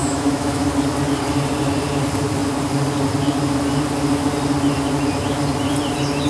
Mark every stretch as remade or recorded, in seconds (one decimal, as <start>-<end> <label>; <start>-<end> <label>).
0.0-0.6 remade; 0.6-6.3 recorded